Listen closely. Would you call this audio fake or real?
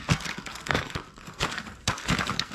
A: fake